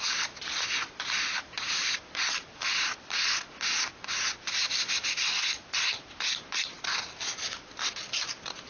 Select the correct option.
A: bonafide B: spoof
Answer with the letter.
A